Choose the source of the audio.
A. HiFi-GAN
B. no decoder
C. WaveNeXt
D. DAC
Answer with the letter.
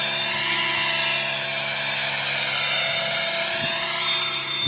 B